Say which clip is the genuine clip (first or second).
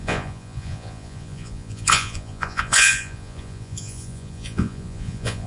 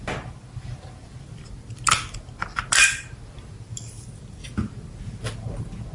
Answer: second